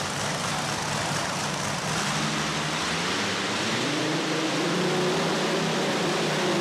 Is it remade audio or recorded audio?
recorded